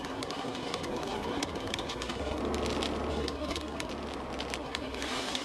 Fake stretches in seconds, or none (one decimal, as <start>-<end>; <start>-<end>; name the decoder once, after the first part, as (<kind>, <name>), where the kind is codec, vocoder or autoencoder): 0.0-2.4 (codec, SNAC); 3.1-3.9; 4.6-5.4

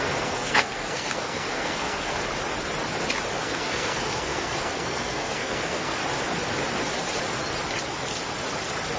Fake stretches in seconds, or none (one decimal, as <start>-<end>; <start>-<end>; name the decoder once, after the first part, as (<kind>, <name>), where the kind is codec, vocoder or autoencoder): 0.0-2.2 (codec, SNAC); 3.4-6.0

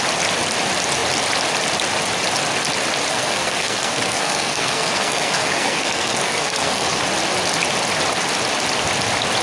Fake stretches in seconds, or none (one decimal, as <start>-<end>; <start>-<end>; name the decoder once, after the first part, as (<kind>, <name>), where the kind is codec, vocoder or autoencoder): 3.1-7.0 (codec, SNAC)

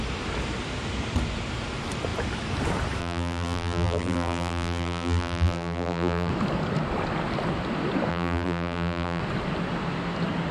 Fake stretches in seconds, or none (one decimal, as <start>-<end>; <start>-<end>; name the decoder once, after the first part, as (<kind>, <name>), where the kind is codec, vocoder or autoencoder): 3.0-6.3 (vocoder, BigVGAN v2); 8.1-9.2

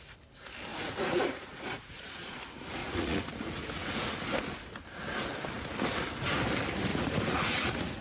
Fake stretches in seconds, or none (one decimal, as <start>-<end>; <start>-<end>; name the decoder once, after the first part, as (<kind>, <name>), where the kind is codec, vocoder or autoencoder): 0.7-2.4 (vocoder, Vocos); 2.8-4.1; 6.9-8.0

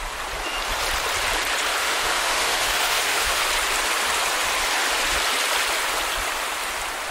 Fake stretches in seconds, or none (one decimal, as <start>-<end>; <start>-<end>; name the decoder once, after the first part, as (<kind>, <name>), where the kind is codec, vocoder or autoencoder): 1.8-3.4 (autoencoder, DAC-VAE)

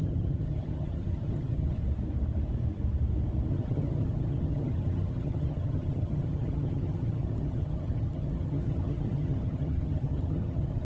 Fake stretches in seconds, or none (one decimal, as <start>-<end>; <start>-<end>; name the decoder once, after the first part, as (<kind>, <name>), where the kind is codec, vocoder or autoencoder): 0.0-1.8 (vocoder, HiFi-GAN); 3.5-10.8

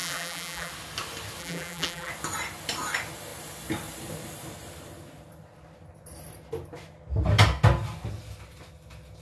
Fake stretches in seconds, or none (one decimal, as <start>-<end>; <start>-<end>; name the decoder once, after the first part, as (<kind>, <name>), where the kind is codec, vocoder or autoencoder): 0.0-0.7 (vocoder, BigVGAN v2); 1.4-2.1